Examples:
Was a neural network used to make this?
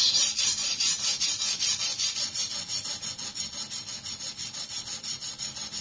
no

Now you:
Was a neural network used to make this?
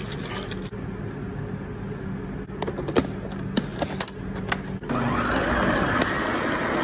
no